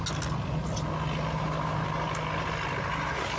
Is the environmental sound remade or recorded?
recorded